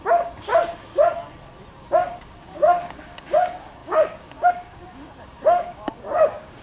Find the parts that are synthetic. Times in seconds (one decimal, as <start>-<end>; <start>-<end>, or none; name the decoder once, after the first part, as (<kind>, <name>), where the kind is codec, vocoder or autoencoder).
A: 0.0-0.5 (codec, DAC); 1.7-6.6